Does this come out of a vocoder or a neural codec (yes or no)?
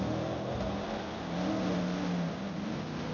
no